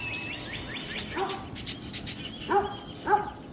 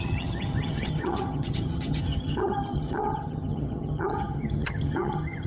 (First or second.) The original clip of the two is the first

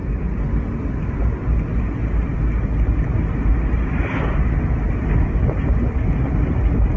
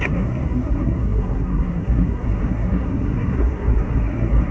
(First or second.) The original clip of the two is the first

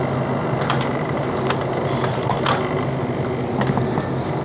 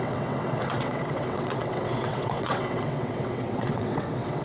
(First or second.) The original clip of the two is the first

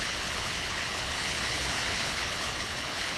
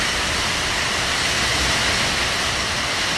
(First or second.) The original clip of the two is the second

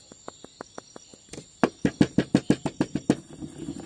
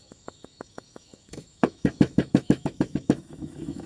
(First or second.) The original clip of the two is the first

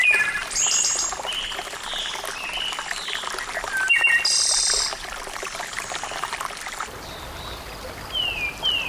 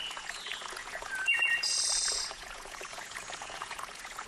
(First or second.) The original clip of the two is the first